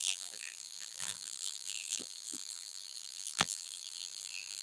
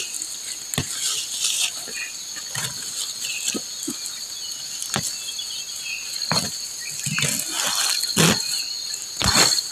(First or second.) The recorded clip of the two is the second